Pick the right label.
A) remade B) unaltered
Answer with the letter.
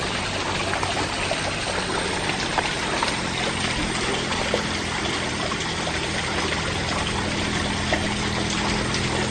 B